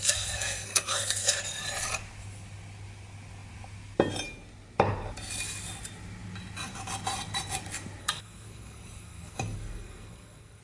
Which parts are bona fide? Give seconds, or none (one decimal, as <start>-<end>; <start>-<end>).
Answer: 1.4-8.0